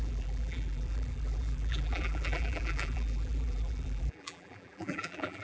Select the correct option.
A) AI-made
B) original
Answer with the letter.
A